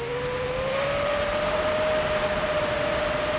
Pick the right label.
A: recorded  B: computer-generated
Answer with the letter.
A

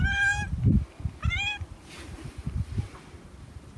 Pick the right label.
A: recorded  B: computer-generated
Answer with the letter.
A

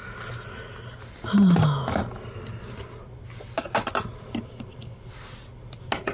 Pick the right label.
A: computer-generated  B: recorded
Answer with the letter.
B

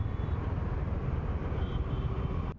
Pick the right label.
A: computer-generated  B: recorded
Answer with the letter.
B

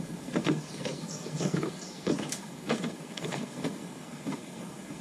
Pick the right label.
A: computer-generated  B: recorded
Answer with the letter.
A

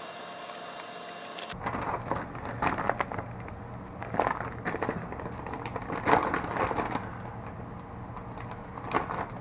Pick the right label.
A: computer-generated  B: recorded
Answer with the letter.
B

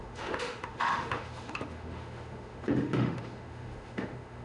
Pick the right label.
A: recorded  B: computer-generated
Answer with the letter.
B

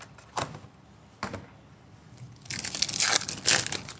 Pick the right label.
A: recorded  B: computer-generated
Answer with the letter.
A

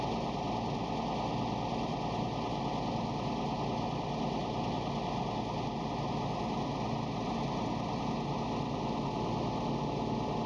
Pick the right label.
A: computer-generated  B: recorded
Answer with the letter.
B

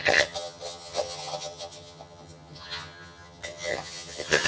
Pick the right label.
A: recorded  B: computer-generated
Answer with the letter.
B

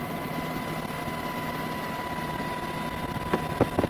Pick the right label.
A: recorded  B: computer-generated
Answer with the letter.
A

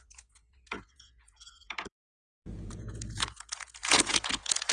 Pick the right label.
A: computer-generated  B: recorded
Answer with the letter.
A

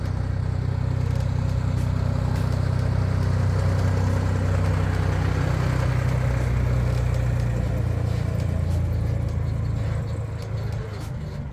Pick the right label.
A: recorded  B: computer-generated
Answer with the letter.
A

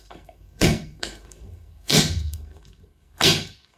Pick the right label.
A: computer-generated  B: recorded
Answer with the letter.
A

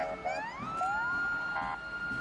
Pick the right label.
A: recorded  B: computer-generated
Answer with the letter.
A